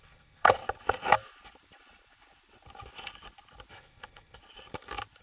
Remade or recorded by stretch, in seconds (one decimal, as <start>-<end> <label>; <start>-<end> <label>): 0.0-0.6 remade; 0.6-3.7 recorded; 3.7-4.4 remade; 4.4-5.2 recorded